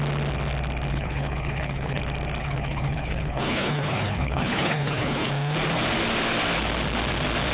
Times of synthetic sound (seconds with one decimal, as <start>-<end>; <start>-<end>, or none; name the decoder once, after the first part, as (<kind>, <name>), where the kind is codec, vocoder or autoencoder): 0.9-2.0 (codec, HILCodec); 2.4-5.3